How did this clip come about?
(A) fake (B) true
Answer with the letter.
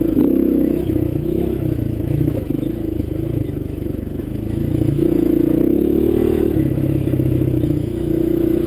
A